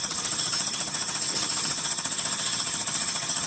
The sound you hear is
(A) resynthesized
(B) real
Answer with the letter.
A